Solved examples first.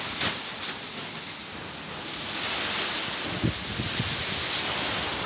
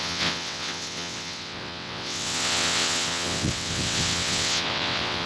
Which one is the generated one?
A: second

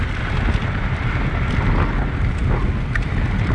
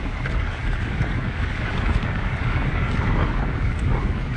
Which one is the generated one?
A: second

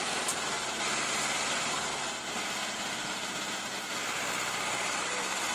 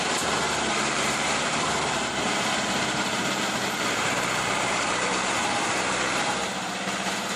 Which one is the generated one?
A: second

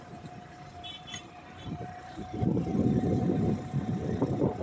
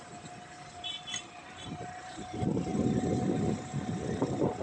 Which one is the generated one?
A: first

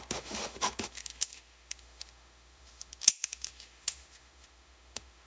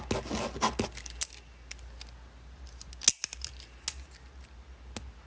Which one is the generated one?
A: first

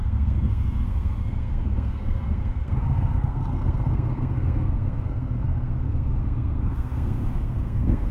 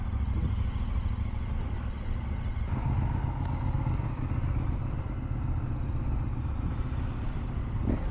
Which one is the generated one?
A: first